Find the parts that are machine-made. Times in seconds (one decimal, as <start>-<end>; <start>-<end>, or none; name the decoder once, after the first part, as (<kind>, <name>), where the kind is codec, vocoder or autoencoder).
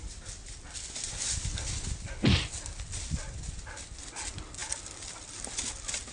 none